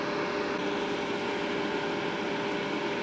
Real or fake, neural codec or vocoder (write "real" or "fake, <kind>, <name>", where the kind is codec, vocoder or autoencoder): real